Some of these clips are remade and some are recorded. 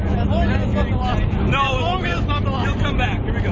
remade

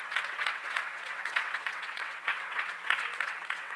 remade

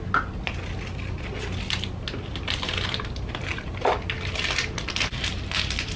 recorded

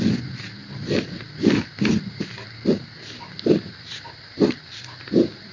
remade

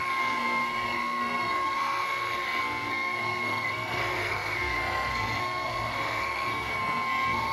remade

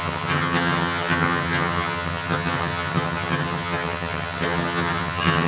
remade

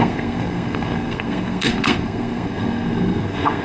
remade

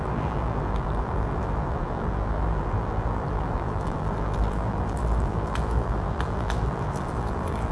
remade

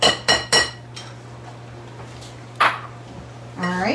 recorded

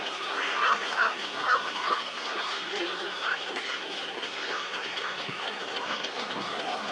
remade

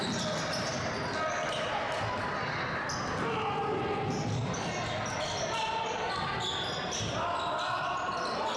recorded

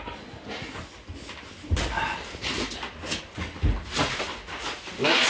recorded